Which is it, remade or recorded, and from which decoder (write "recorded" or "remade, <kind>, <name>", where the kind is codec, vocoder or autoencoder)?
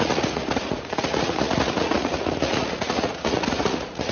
remade, vocoder, Vocos